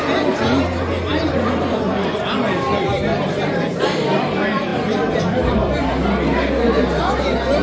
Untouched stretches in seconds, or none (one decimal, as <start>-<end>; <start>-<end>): 0.0-1.1; 2.2-4.7; 5.9-7.6